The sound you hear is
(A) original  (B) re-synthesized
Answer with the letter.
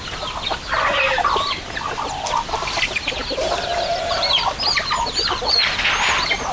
A